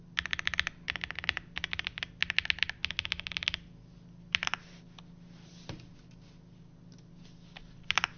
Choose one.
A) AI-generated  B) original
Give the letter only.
B